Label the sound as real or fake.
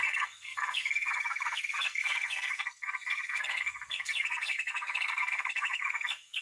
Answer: fake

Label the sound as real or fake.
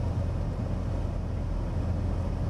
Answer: real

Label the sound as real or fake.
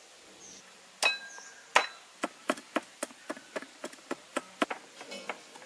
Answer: real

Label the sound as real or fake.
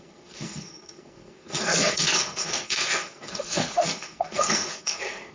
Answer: fake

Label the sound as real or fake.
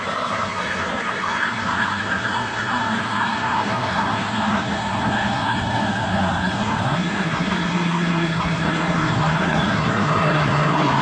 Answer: fake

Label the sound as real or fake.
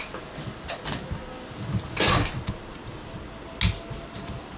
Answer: real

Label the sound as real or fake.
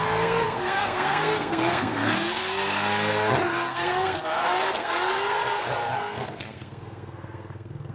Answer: fake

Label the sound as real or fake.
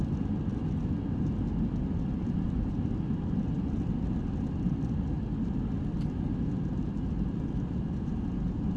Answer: real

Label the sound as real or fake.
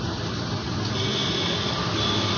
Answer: real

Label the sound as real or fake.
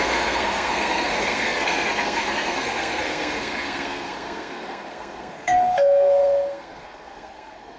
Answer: fake